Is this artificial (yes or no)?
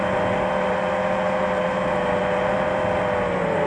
no